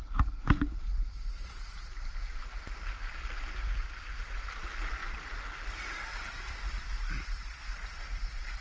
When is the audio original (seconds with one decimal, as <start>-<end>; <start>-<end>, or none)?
0.0-8.6